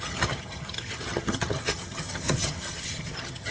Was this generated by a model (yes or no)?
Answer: yes